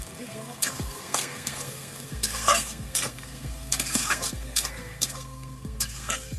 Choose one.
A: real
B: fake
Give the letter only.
B